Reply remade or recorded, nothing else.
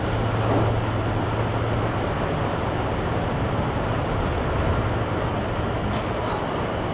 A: recorded